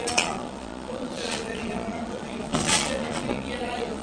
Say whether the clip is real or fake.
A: fake